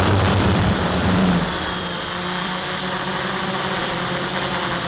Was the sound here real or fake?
fake